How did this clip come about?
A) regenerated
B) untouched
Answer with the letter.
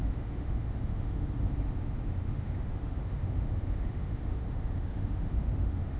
A